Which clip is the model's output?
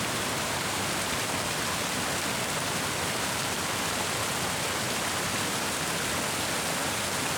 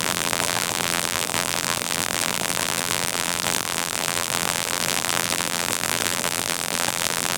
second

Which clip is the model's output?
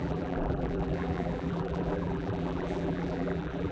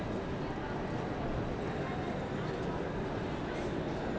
first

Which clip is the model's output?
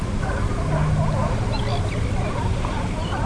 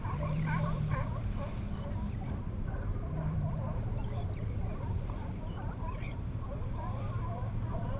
second